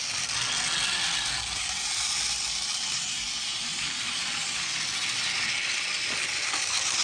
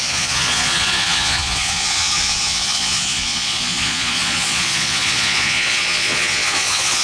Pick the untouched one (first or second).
first